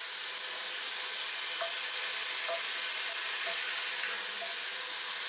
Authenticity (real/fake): real